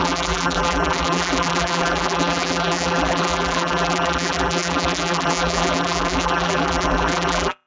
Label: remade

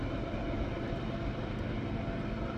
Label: recorded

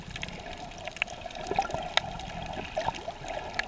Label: recorded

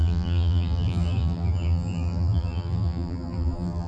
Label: remade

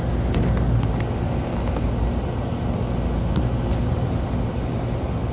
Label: recorded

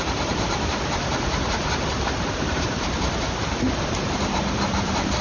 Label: remade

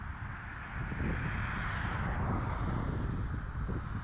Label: recorded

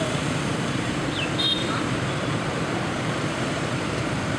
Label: remade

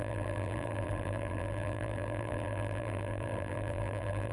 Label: remade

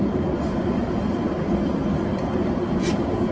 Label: recorded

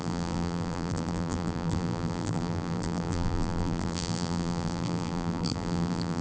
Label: remade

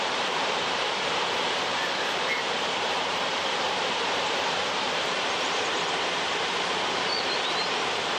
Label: remade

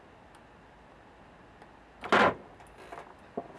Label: recorded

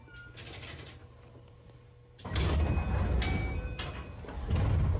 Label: recorded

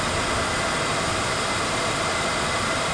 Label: recorded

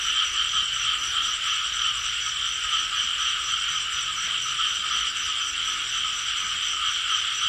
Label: recorded